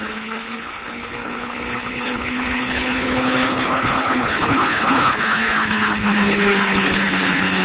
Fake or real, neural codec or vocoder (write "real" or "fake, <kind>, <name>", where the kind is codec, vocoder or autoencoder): fake, codec, HILCodec